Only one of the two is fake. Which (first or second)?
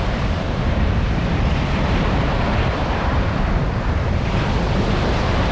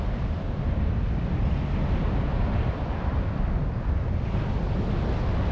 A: first